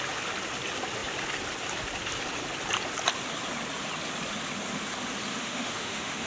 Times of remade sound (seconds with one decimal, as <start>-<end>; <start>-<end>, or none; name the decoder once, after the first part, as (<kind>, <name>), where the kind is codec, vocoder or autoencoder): 5.3-6.3 (autoencoder, DAC-VAE)